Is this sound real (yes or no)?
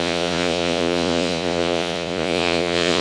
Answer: no